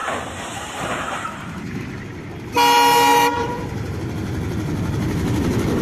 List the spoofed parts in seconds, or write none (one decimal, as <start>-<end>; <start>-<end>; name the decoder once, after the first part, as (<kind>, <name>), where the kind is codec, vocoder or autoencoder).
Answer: 0.0-1.8 (vocoder, BigVGAN v2); 3.1-4.0